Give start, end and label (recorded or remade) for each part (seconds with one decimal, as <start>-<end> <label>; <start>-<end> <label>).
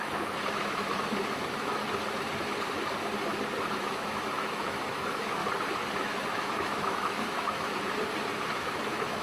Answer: 0.0-1.8 remade; 1.8-3.8 recorded; 3.8-5.4 remade; 5.4-6.0 recorded; 6.0-7.7 remade; 7.7-8.6 recorded; 8.6-9.2 remade